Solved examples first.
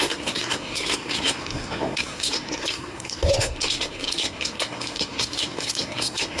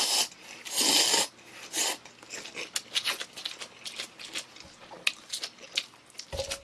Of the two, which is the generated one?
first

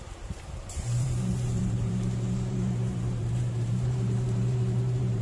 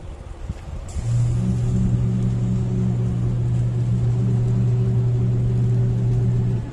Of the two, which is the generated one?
first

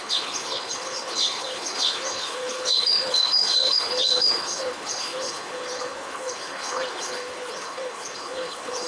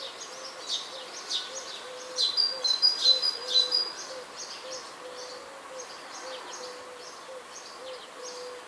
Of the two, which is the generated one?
first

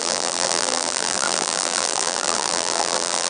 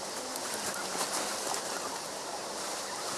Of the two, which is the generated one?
first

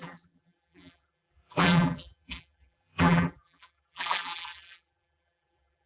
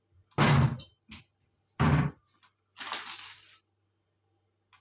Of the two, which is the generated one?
first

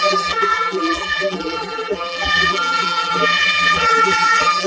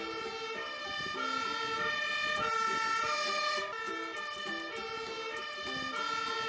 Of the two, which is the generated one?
first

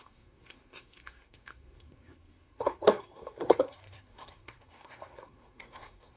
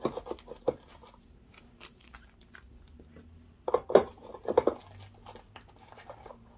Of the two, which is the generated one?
first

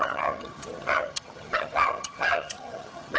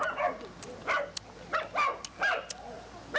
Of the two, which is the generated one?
first